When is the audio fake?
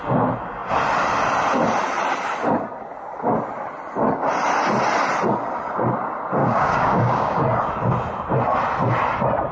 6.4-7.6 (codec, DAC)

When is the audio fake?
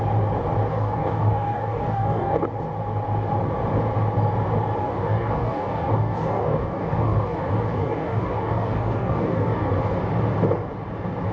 0.7-2.4 (codec, DAC); 4.8-9.8